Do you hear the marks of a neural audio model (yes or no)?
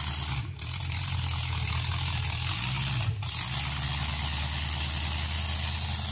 no